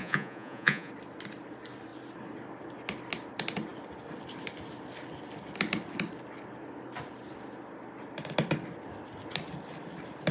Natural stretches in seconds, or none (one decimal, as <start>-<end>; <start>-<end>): 0.9-10.3